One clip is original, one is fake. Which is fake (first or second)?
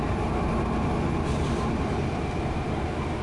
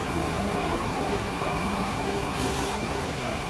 second